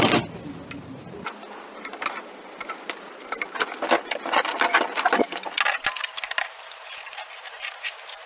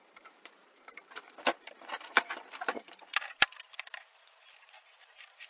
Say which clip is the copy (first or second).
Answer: second